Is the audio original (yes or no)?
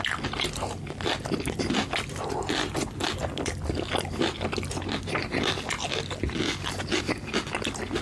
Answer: yes